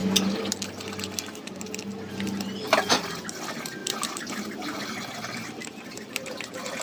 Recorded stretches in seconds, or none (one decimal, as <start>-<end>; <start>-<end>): 0.0-3.8; 6.3-6.8

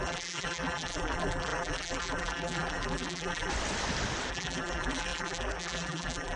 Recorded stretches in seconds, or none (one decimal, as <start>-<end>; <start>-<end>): 3.5-4.3

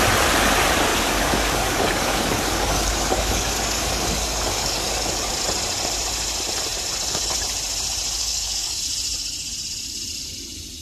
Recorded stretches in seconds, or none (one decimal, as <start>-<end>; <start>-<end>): 0.0-0.9; 5.3-8.2; 8.8-10.8

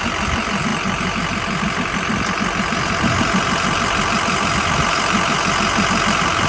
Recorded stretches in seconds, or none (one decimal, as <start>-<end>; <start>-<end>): 0.0-0.7; 4.6-6.5

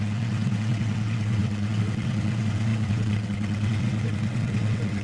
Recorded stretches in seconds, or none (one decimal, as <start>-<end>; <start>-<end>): none

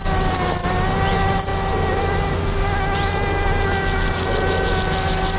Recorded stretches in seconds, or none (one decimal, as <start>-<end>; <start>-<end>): 0.0-5.4